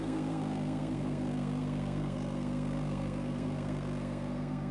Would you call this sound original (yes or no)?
no